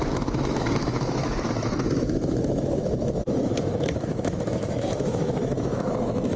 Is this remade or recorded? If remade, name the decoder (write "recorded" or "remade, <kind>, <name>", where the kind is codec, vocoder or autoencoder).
remade, autoencoder, DAC-VAE